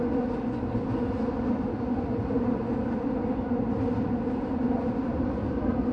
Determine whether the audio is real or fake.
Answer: real